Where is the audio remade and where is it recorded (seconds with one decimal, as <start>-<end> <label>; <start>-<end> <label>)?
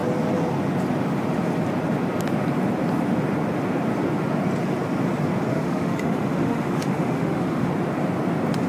0.0-5.5 recorded; 5.5-7.7 remade; 7.7-8.7 recorded